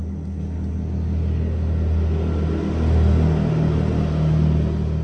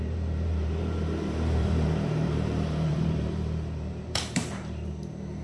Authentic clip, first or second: first